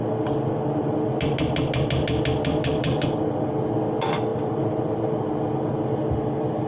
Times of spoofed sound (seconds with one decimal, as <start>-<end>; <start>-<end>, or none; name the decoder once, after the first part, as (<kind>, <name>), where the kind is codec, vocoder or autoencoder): 4.3-4.9 (vocoder, BigVGAN v2)